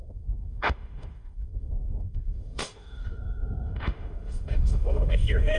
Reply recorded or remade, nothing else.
remade